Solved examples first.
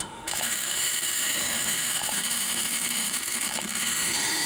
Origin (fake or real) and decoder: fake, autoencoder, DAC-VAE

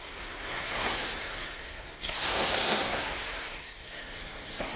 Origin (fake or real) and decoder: fake, codec, SNAC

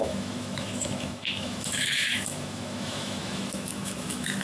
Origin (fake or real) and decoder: fake, autoencoder, DAC-VAE